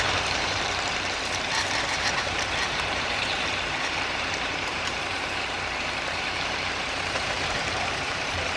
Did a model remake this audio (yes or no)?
yes